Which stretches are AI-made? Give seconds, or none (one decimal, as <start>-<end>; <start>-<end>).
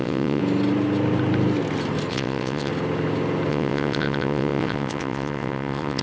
0.0-0.4; 2.1-2.7; 3.5-6.0